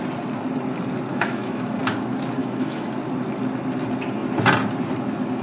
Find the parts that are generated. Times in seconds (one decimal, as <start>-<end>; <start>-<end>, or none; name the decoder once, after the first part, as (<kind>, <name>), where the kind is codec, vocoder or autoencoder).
1.1-1.8 (autoencoder, DAC-VAE); 2.4-2.9